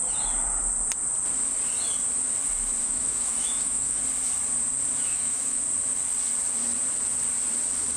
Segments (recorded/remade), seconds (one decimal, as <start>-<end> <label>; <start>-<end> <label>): 0.0-2.8 recorded; 2.8-4.0 remade; 4.0-5.1 recorded; 5.1-5.6 remade; 5.6-8.0 recorded